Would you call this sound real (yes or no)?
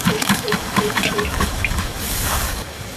no